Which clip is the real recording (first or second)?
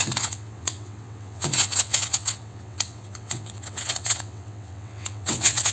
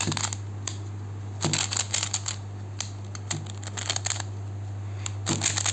second